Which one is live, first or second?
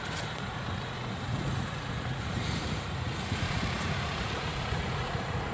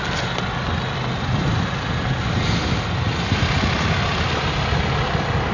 second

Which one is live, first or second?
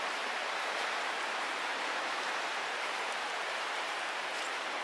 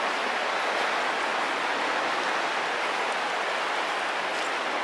second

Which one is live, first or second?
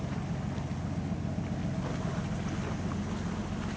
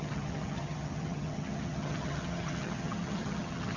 first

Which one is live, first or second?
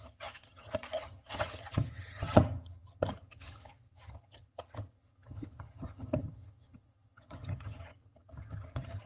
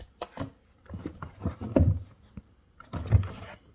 second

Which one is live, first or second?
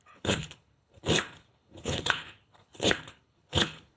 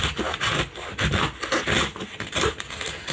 second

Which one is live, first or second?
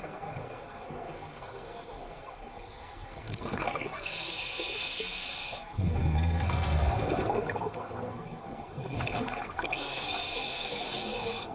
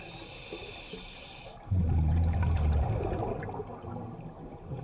second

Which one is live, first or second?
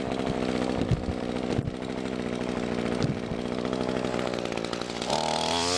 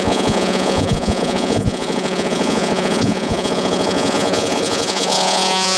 first